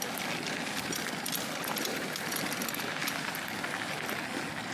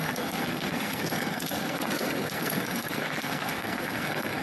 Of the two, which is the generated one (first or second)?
second